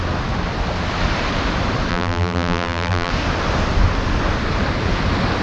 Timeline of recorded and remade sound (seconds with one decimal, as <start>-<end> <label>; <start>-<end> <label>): 0.0-1.9 recorded; 1.9-3.1 remade; 3.1-5.4 recorded